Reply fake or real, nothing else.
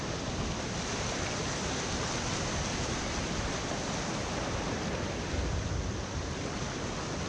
real